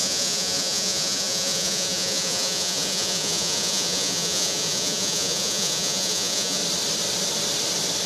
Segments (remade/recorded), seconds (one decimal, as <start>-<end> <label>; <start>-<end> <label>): 0.0-6.6 remade; 6.6-8.1 recorded